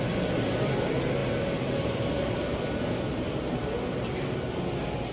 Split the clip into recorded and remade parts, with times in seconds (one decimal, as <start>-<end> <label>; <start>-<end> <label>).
0.0-5.1 recorded